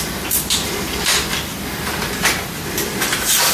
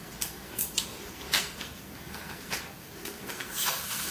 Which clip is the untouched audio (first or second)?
first